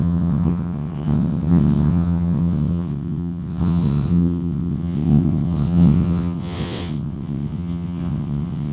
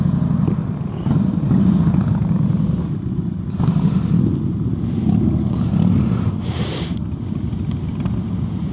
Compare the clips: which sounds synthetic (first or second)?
first